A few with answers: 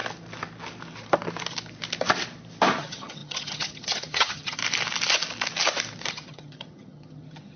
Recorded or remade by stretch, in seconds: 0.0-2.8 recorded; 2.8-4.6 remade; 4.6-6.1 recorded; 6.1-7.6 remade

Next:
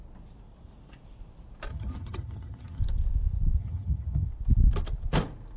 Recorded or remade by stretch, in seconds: 0.0-1.7 recorded; 1.7-2.8 remade; 2.8-3.6 recorded; 3.6-4.3 remade; 4.3-5.6 recorded

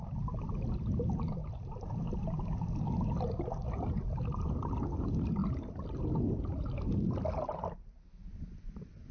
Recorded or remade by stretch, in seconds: 0.0-9.1 recorded

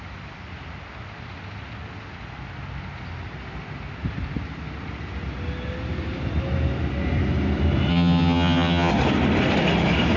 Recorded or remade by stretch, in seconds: 0.0-7.9 recorded; 7.9-8.9 remade; 8.9-10.2 recorded